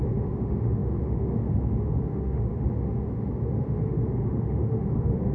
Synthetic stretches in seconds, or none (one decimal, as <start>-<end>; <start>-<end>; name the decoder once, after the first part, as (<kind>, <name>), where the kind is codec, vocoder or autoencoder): 0.0-5.3 (autoencoder, DAC-VAE)